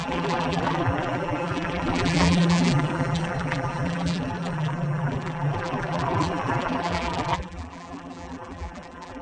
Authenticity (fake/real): fake